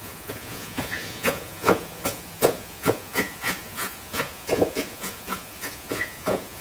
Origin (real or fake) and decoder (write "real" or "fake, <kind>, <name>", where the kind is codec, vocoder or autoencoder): fake, vocoder, Vocos